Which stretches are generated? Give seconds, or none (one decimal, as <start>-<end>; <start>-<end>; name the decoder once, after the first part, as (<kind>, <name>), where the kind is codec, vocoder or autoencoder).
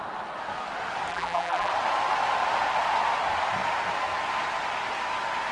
1.1-1.7 (vocoder, BigVGAN v2)